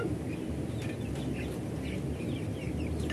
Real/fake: real